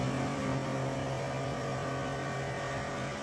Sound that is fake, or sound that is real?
real